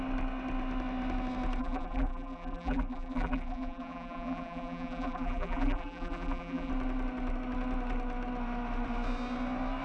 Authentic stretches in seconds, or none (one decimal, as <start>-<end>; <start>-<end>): 0.0-1.6; 6.7-9.8